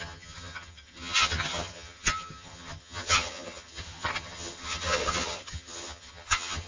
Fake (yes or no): yes